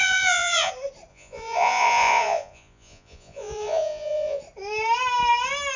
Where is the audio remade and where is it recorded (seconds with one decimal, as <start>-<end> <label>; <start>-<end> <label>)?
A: 0.0-0.7 remade; 0.7-1.1 recorded; 1.1-4.4 remade; 4.4-5.8 recorded